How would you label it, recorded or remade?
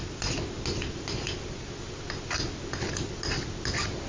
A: recorded